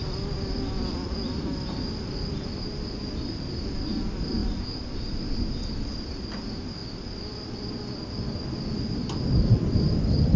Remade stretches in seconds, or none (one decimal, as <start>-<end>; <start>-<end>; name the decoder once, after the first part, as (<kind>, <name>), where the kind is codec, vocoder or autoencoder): none